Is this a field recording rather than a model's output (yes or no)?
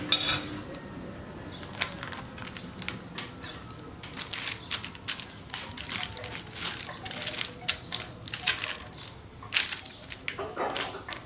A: yes